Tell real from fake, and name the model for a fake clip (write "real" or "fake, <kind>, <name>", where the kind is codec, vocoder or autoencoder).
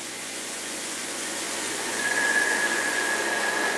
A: fake, vocoder, Vocos